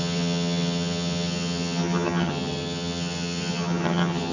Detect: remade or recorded remade